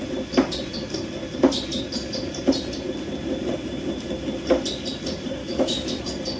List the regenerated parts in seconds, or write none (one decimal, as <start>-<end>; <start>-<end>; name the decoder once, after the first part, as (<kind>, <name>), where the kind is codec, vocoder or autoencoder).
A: 5.4-6.0 (autoencoder, DAC-VAE)

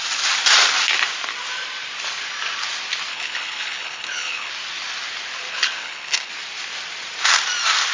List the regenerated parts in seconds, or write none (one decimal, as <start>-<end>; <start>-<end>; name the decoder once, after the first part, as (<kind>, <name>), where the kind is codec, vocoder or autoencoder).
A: 3.1-4.5 (codec, HILCodec); 5.5-6.3

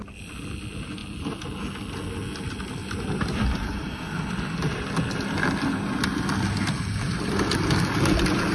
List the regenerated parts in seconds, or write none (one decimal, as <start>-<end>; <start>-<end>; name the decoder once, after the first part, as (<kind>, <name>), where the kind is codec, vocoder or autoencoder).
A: 2.8-5.7 (vocoder, BigVGAN v2)

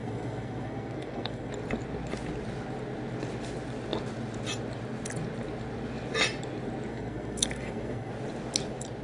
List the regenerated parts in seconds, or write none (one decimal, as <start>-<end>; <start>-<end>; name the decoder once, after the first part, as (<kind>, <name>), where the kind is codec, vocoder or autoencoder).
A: 0.0-1.5 (codec, SNAC); 6.9-8.1

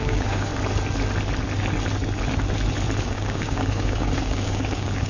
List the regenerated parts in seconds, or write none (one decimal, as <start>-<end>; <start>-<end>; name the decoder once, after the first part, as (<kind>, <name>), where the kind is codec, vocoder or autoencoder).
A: 0.0-0.5 (codec, DAC); 3.0-5.1

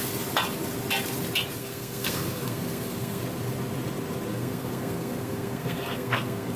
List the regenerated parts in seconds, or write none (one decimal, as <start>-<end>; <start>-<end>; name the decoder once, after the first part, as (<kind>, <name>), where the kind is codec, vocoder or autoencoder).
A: 1.6-3.2 (codec, SNAC); 4.3-6.6

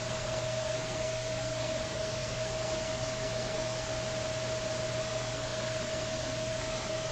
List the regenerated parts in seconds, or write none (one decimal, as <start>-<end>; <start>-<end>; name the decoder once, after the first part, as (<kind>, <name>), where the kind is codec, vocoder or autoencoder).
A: 0.0-3.9 (codec, SNAC); 5.0-7.1